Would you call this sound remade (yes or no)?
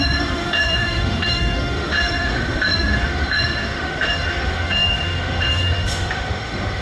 yes